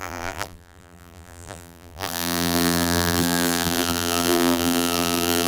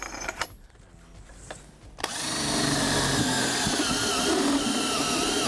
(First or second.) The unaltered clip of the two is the second